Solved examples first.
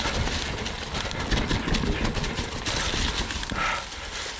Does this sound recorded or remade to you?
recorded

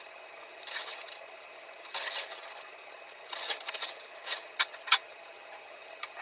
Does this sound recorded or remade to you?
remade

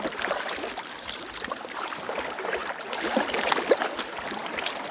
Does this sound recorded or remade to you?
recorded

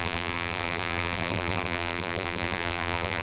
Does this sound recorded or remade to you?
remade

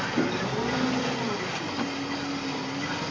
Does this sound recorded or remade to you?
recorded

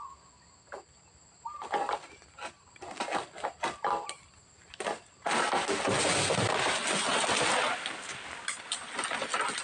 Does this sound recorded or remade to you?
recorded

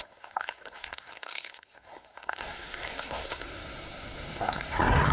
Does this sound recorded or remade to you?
remade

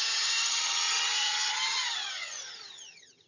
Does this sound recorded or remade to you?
remade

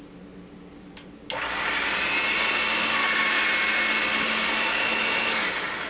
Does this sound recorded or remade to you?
recorded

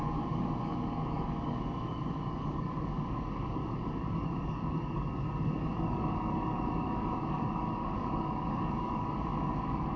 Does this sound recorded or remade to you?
remade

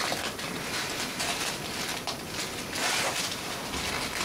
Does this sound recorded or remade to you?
recorded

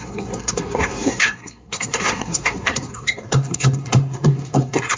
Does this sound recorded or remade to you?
remade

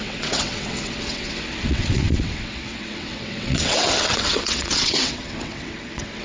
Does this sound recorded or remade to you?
remade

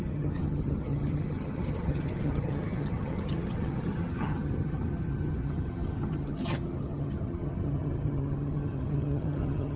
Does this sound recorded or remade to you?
remade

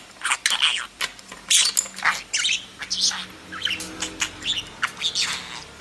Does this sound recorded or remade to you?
recorded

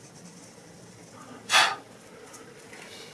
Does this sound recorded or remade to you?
recorded